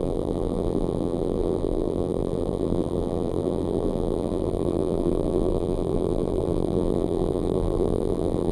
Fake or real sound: fake